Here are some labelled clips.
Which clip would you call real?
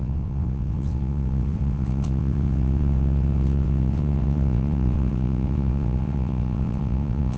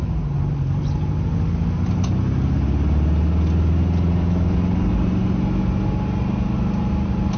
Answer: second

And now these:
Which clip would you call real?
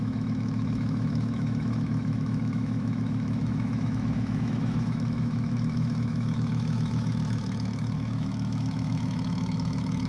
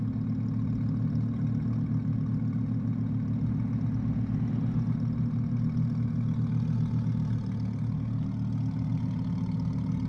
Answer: second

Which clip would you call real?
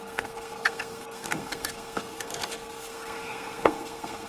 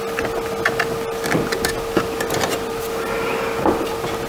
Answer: second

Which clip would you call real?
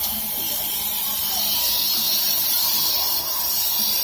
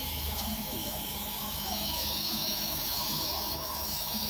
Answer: first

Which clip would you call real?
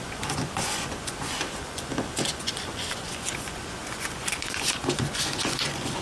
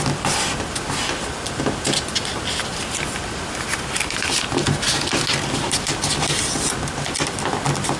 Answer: second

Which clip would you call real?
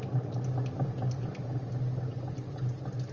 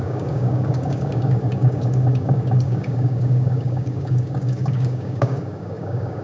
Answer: first